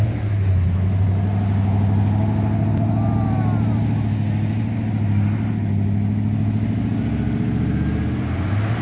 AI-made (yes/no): no